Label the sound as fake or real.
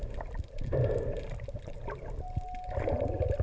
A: real